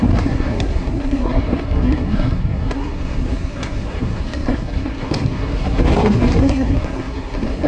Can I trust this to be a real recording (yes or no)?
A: no